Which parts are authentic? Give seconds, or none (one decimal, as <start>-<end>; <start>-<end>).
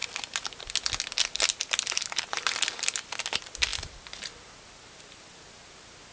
0.0-6.1